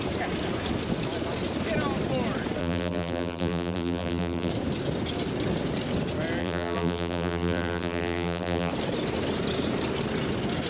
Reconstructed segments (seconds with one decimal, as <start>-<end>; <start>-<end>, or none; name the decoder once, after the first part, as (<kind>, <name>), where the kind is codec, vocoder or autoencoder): 2.6-4.5 (vocoder, BigVGAN v2); 6.4-8.7